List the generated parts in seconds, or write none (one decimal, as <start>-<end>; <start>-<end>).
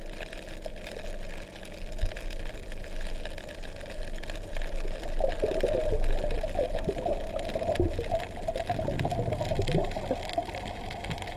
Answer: none